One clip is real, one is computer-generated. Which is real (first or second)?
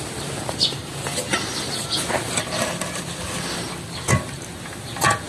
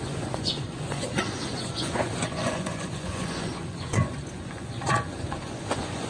first